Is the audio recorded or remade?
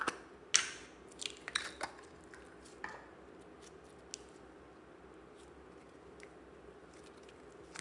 recorded